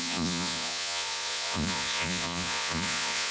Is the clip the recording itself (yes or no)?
no